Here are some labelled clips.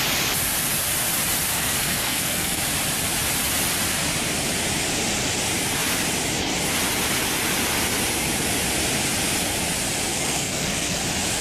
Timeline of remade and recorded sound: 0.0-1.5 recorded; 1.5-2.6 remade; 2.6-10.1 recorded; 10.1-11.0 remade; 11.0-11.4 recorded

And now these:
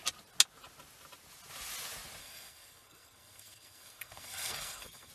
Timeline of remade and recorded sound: 0.0-2.2 recorded; 2.2-5.1 remade

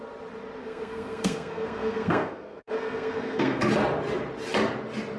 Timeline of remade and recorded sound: 0.0-0.6 recorded; 0.6-3.7 remade; 3.7-5.2 recorded

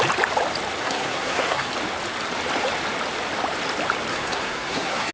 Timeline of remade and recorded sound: 0.0-0.8 recorded; 0.8-1.7 remade; 1.7-4.1 recorded; 4.1-5.1 remade

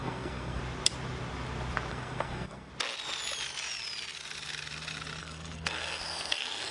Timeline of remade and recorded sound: 0.0-0.6 remade; 0.6-1.9 recorded; 1.9-2.7 remade; 2.7-5.2 recorded; 5.2-6.7 remade

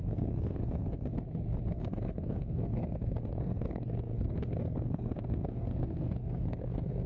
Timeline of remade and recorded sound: 0.0-1.1 remade; 1.1-1.7 recorded; 1.7-7.1 remade

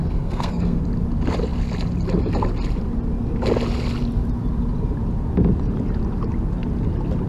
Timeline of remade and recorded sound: 0.0-0.8 remade; 0.8-7.3 recorded

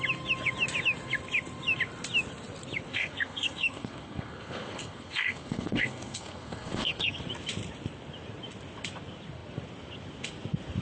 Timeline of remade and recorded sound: 0.0-2.9 recorded; 2.9-7.2 remade; 7.2-10.8 recorded